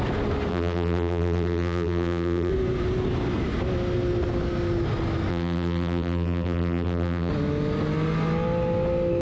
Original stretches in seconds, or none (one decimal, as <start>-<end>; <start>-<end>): 0.0-0.5; 2.5-5.3; 7.3-9.2